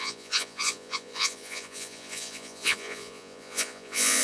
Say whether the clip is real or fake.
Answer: fake